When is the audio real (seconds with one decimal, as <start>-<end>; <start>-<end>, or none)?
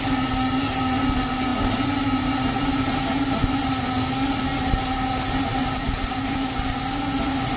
0.0-7.6